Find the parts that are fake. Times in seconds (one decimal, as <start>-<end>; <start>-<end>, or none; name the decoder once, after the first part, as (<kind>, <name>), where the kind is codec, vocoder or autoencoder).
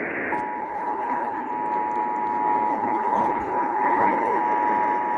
0.6-1.5 (codec, HILCodec); 2.7-4.4